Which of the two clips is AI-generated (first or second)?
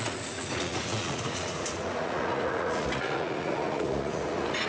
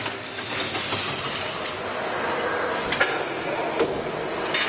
first